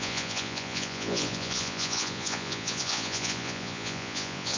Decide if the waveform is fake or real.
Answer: fake